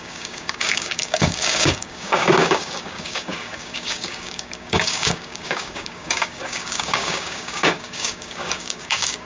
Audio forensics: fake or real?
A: fake